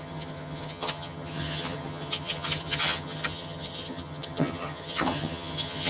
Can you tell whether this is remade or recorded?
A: remade